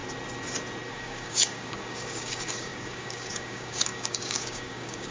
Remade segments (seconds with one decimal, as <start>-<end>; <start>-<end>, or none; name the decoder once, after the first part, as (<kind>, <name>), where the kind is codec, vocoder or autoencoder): 0.9-5.1 (codec, DAC)